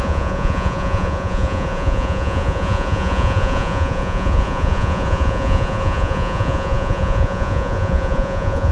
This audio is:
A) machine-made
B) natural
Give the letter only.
A